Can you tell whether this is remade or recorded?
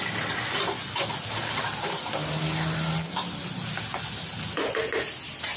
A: recorded